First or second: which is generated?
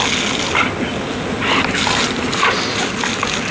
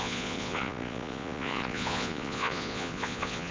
second